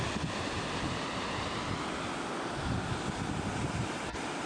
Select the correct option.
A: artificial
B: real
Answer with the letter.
B